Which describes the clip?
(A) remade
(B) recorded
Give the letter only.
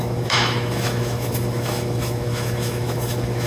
A